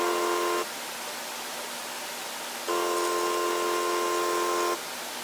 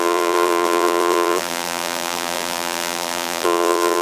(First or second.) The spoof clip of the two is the second